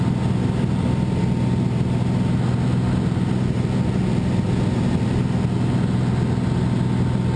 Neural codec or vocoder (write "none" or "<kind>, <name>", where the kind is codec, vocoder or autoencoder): none